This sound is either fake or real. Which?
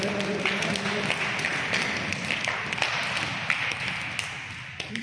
real